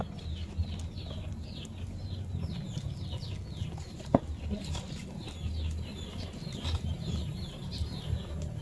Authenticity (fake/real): real